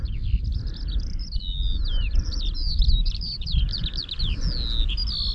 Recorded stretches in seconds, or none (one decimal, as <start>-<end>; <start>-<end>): 0.0-0.5; 1.4-5.3